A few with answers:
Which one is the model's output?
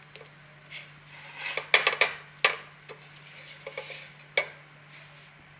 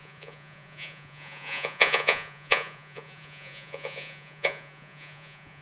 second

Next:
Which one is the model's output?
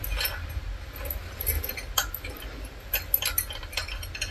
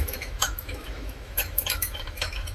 second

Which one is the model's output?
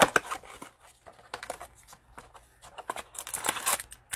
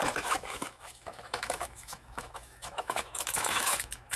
second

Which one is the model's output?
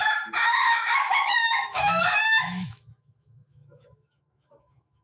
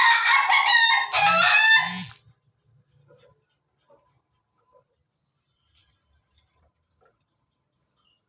first